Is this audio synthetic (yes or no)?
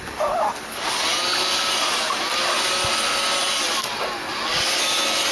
no